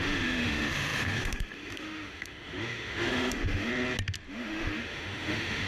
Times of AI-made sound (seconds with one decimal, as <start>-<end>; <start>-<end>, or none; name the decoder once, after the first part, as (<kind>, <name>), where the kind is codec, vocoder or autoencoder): 0.0-3.7 (autoencoder, DAC-VAE); 4.3-5.7